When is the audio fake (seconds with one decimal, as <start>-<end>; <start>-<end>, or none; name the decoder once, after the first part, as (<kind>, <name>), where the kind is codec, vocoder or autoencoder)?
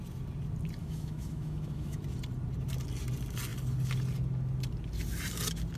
0.8-2.0 (autoencoder, DAC-VAE)